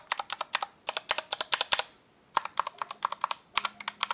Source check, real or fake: real